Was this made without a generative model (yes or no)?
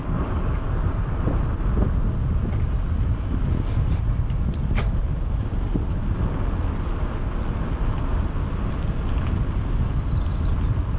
yes